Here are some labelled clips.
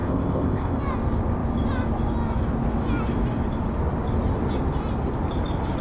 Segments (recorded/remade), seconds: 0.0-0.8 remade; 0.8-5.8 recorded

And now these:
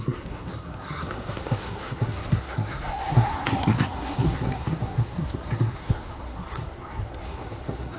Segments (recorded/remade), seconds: 0.0-8.0 remade

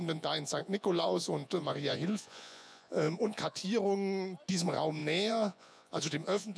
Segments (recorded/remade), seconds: 0.0-3.6 remade; 3.6-4.5 recorded; 4.5-6.6 remade

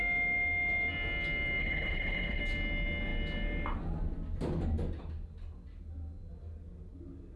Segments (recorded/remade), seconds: 0.0-1.6 recorded; 1.6-2.4 remade; 2.4-7.4 recorded

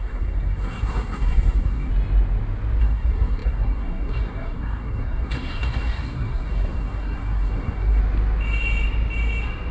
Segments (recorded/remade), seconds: 0.0-1.9 remade; 1.9-2.8 recorded; 2.8-8.0 remade; 8.0-9.7 recorded

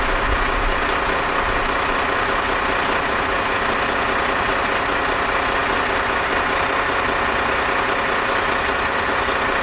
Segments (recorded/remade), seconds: 0.0-9.6 recorded